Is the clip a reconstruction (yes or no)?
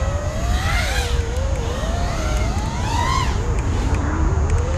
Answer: no